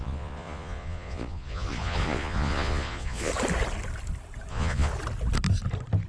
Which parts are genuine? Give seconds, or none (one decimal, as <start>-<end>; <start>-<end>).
3.3-4.5; 4.9-6.1